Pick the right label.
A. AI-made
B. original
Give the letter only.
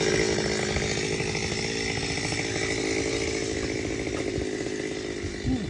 B